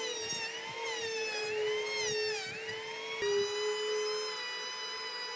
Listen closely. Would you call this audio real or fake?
real